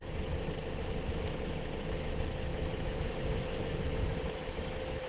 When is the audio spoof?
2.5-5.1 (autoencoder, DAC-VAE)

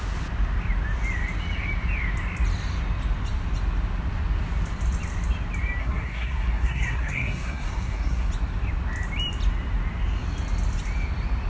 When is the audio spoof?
5.8-8.3 (codec, SNAC)

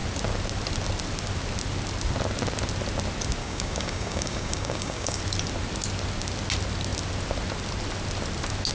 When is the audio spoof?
3.4-5.2 (codec, DAC)

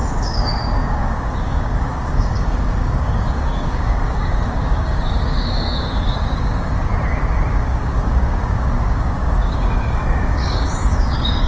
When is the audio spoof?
0.0-6.9 (codec, DAC); 7.5-11.5

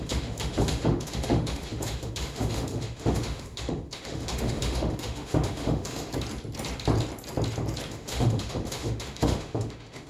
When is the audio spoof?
0.0-6.1 (autoencoder, DAC-VAE); 7.9-10.1